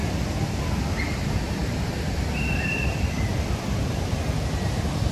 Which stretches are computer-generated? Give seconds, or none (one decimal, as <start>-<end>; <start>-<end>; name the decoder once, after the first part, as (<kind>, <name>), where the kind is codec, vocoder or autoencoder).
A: 1.6-3.9 (vocoder, BigVGAN v2)